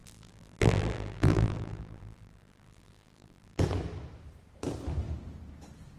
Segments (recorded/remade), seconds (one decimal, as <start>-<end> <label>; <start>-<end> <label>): 0.0-3.6 remade; 3.6-6.0 recorded